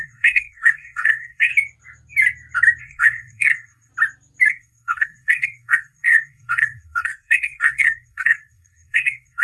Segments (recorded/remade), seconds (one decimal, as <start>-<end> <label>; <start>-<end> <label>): 0.0-1.5 remade; 1.5-2.8 recorded; 2.8-3.9 remade; 3.9-4.5 recorded; 4.5-9.4 remade